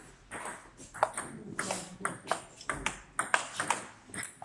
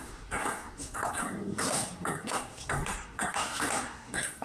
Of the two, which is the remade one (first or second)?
second